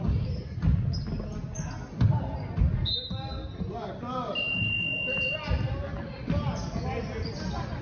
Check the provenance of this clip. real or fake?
real